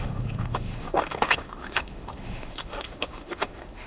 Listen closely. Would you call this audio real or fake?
fake